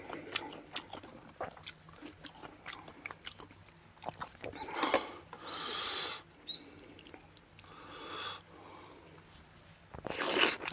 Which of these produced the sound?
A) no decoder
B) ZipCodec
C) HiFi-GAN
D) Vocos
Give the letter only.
A